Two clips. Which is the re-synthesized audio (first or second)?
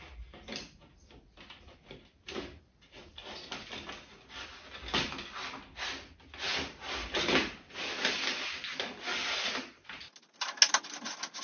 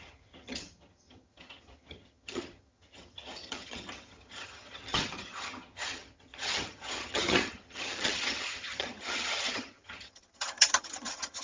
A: second